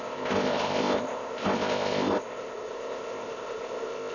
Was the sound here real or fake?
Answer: fake